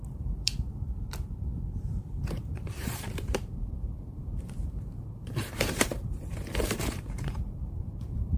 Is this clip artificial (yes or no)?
yes